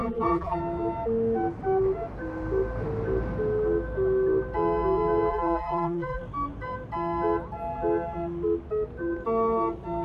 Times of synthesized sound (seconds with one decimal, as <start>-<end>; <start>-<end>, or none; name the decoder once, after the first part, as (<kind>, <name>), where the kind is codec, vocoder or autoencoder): 0.0-0.6 (vocoder, BigVGAN v2); 5.3-6.2